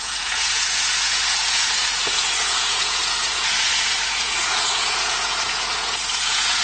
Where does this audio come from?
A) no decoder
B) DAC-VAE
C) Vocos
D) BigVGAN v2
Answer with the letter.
C